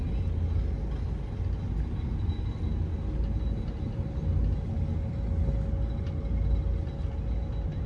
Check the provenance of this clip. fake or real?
real